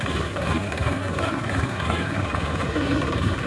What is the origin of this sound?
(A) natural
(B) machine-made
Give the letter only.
B